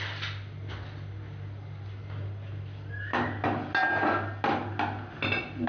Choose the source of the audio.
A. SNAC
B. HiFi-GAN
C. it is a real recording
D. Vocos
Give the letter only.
C